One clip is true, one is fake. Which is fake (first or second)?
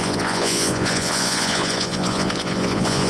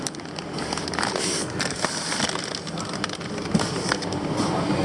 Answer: first